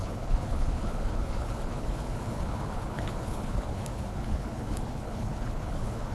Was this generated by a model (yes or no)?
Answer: yes